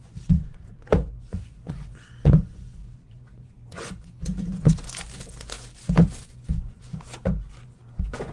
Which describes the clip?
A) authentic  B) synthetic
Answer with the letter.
B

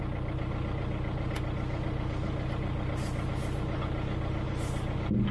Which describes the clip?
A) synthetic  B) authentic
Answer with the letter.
B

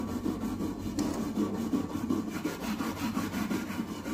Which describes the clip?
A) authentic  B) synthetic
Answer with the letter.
A